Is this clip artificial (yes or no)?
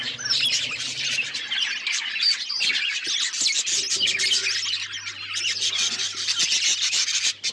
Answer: no